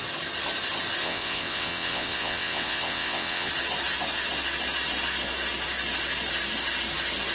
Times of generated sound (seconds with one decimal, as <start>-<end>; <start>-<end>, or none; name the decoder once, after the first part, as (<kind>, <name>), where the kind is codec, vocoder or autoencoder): 1.0-3.5 (vocoder, WaveNeXt)